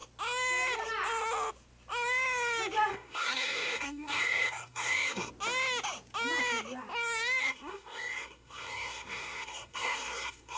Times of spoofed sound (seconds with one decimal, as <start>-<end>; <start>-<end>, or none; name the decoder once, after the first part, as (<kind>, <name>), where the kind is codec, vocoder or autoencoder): 2.9-5.3 (codec, SNAC); 7.4-10.6